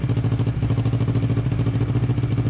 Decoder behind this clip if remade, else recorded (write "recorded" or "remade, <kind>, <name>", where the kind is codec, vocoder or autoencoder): recorded